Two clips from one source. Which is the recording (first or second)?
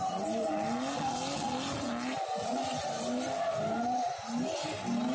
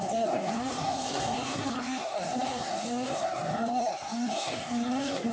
first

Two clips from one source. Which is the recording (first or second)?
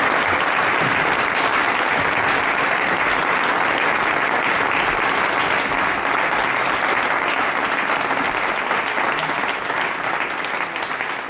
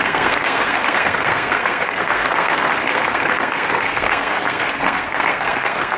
first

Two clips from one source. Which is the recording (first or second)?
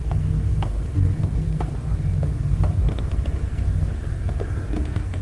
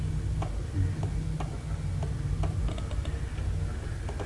second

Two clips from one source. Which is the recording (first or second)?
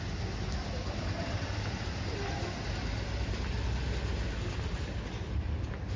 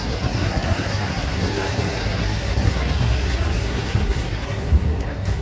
first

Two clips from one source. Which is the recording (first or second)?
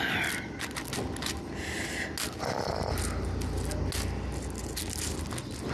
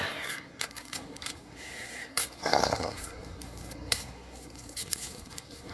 first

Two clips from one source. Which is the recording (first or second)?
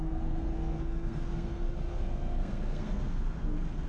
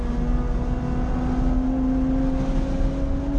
second